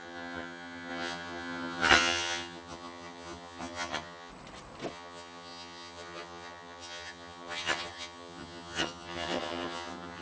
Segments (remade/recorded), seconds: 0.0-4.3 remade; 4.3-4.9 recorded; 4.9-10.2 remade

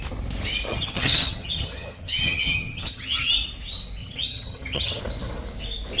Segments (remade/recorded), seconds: 0.0-0.7 recorded; 0.7-3.3 remade; 3.3-4.0 recorded; 4.0-5.0 remade; 5.0-6.0 recorded